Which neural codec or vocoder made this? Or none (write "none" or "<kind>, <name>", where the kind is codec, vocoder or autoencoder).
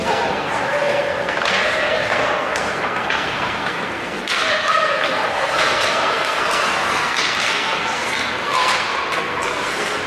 codec, SNAC